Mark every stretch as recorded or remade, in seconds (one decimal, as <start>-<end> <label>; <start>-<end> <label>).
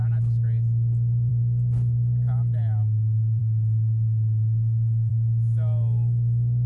0.0-6.7 recorded